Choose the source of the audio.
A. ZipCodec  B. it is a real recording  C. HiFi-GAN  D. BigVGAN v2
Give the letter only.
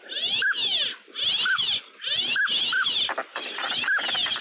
B